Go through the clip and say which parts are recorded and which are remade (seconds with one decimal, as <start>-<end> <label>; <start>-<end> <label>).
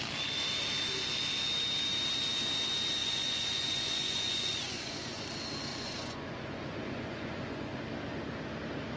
0.0-3.0 recorded; 3.0-5.2 remade; 5.2-5.7 recorded; 5.7-7.8 remade; 7.8-9.0 recorded